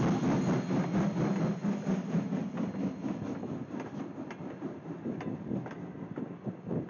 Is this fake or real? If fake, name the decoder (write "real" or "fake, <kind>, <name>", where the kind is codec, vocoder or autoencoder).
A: real